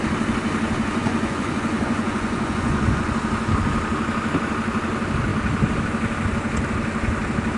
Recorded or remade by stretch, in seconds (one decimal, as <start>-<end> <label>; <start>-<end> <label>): 0.0-1.0 recorded; 1.0-3.1 remade; 3.1-7.6 recorded